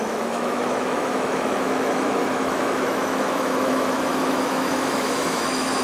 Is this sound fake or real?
fake